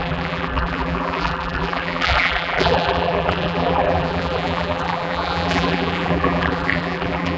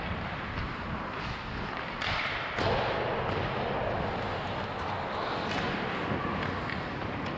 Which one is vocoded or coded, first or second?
first